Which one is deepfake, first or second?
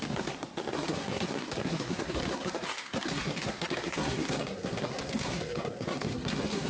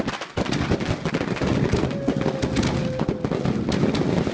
first